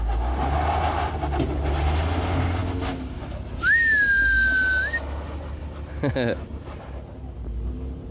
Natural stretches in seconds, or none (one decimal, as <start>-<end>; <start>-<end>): 0.0-8.1